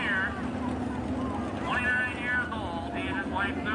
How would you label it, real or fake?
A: real